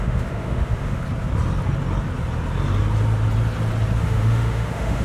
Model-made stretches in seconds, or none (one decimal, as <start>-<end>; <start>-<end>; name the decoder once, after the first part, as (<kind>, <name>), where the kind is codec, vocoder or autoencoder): 0.0-1.0 (autoencoder, DAC-VAE); 4.0-5.0